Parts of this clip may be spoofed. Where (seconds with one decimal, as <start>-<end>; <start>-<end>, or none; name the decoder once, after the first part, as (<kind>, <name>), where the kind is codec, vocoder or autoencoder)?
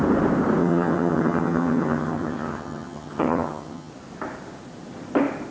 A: 0.6-3.9 (vocoder, HiFi-GAN)